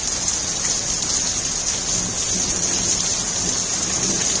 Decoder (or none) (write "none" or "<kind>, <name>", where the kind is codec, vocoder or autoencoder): none